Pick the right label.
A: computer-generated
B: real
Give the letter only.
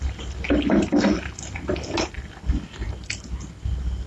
B